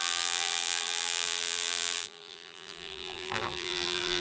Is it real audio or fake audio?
fake